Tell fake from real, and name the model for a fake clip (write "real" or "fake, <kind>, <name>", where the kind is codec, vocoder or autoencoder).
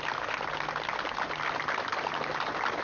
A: real